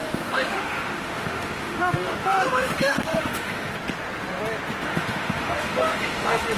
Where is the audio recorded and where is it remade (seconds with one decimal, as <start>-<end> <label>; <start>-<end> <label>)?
0.0-3.7 remade; 3.7-4.9 recorded; 4.9-6.6 remade

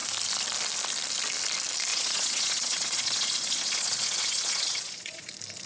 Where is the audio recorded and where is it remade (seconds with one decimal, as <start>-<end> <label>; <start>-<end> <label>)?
0.0-1.9 recorded; 1.9-5.3 remade; 5.3-5.7 recorded

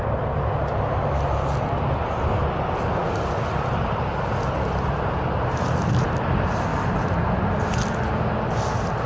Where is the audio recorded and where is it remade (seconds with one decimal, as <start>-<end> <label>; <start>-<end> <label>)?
0.0-6.7 recorded; 6.7-7.5 remade; 7.5-9.1 recorded